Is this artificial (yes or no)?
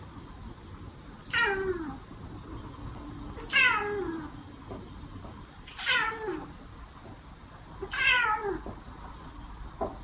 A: no